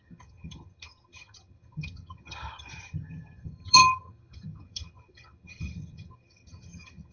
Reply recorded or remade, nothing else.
remade